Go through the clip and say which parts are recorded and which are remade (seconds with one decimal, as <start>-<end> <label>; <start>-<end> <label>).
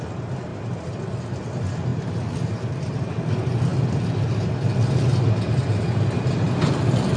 0.0-7.2 recorded